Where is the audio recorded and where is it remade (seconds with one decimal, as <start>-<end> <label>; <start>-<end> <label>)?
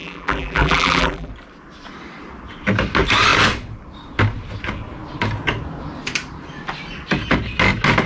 0.0-1.3 remade; 1.3-8.1 recorded